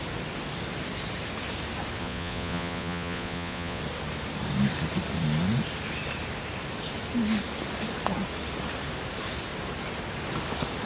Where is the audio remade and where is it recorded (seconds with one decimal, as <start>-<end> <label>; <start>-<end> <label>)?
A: 0.0-2.0 recorded; 2.0-3.8 remade; 3.8-10.8 recorded